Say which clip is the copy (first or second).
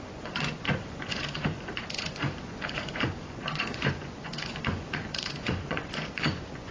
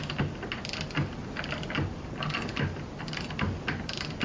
first